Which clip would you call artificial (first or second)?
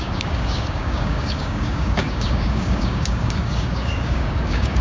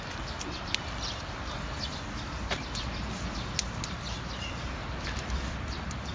first